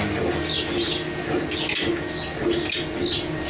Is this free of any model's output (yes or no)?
yes